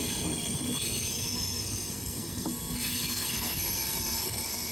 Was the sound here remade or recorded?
remade